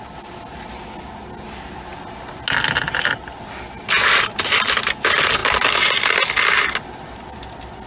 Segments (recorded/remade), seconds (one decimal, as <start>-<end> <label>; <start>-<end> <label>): 0.0-7.9 recorded